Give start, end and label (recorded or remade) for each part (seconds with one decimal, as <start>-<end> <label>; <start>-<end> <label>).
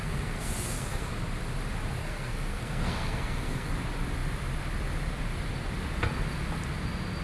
0.0-1.1 remade; 1.1-2.0 recorded; 2.0-3.7 remade; 3.7-7.2 recorded